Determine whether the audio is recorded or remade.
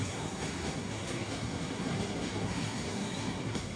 remade